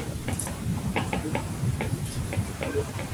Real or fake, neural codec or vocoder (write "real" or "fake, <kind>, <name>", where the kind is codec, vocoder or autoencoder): fake, vocoder, BigVGAN v2